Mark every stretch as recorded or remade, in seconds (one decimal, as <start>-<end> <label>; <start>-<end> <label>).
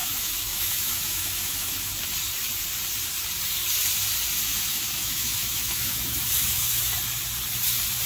0.0-1.9 remade; 1.9-4.5 recorded; 4.5-6.8 remade; 6.8-8.1 recorded